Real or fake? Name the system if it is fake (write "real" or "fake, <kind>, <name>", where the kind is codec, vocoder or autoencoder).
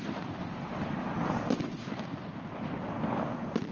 real